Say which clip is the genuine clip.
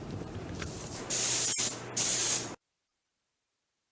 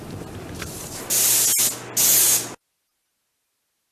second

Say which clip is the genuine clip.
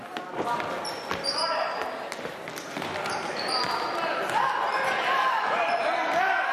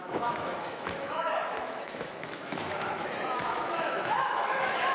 first